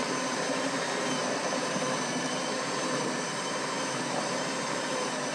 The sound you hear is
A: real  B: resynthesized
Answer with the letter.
B